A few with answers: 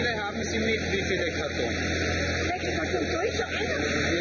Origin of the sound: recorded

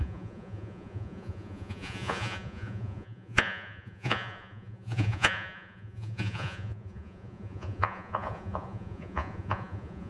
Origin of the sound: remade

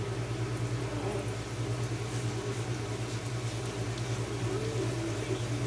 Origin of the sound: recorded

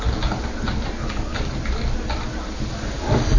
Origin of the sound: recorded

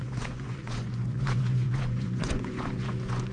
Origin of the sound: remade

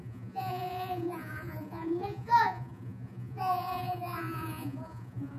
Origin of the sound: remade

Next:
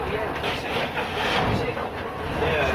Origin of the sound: recorded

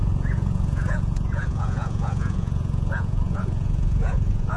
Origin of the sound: remade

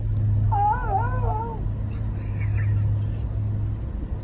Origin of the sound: recorded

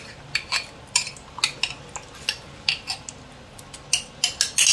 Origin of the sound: recorded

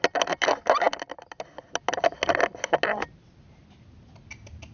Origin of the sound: recorded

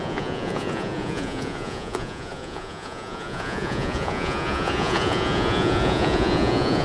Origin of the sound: remade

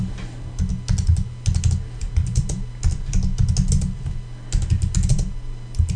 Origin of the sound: recorded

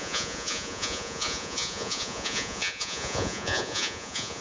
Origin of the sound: remade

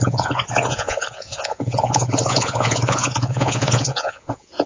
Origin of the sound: remade